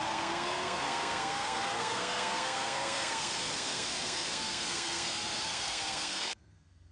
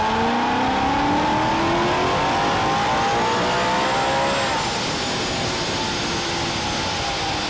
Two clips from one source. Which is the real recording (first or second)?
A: second